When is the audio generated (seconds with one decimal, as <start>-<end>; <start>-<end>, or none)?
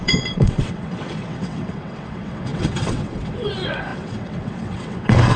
0.0-5.4